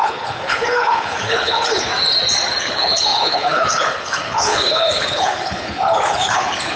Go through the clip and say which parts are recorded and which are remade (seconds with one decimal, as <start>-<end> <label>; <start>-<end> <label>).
0.0-1.9 remade; 1.9-2.6 recorded; 2.6-6.8 remade